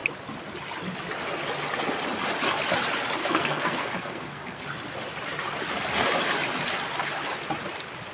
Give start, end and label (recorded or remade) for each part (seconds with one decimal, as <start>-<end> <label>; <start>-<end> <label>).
0.0-3.2 recorded; 3.2-4.6 remade; 4.6-8.1 recorded